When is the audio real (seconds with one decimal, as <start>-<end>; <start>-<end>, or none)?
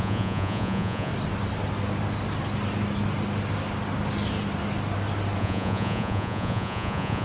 1.1-5.4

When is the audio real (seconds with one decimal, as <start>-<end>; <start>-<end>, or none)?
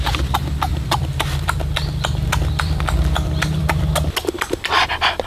0.0-0.7; 3.9-5.3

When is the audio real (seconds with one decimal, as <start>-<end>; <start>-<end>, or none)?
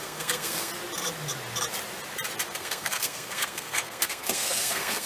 0.7-2.6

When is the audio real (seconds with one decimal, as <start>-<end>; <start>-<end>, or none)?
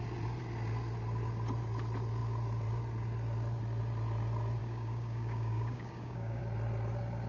0.0-4.6; 6.4-7.3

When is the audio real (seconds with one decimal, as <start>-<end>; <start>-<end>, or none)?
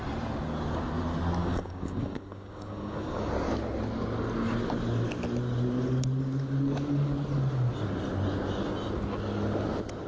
0.0-1.4; 3.3-10.1